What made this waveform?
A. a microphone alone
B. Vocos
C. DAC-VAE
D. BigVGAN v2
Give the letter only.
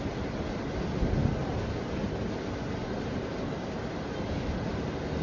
A